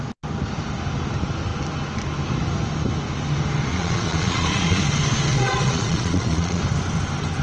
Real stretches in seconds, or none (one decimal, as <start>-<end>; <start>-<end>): 0.0-3.7; 4.8-5.3; 6.6-7.4